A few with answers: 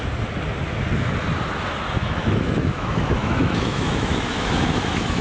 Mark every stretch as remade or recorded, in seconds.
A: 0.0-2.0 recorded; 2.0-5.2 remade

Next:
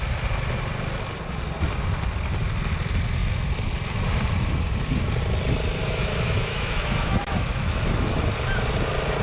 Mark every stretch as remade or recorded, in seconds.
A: 0.0-5.8 recorded; 5.8-8.2 remade; 8.2-9.2 recorded

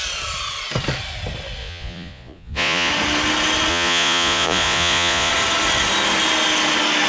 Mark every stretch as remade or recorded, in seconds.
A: 0.0-1.6 recorded; 1.6-2.9 remade; 2.9-3.7 recorded; 3.7-5.3 remade; 5.3-7.1 recorded

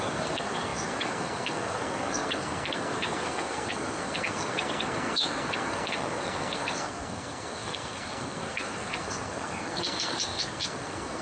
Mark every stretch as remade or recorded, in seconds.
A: 0.0-11.2 remade